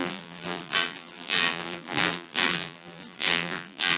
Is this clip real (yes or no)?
no